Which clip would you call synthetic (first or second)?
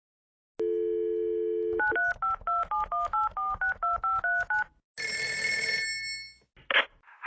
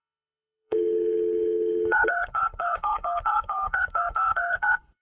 second